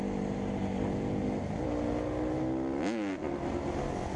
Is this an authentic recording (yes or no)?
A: yes